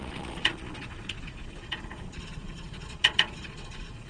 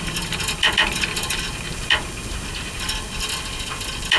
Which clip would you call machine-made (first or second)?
first